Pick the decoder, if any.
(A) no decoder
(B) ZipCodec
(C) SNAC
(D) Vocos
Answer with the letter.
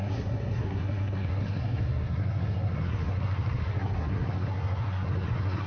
C